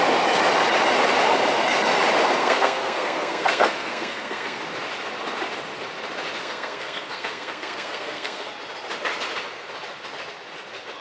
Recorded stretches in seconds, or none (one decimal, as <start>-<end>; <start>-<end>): 0.0-2.4; 4.6-6.4; 8.5-11.0